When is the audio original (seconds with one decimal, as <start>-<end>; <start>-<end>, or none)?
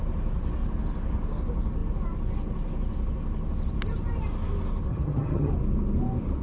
0.0-4.9; 5.5-6.4